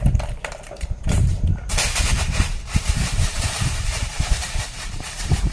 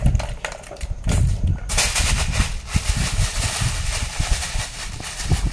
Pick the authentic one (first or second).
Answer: second